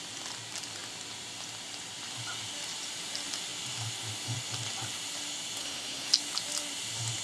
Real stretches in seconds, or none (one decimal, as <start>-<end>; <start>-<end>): 0.0-5.6; 6.1-7.2